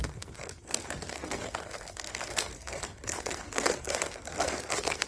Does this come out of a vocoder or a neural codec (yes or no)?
yes